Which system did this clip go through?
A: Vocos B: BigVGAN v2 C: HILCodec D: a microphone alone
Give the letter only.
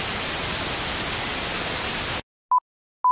D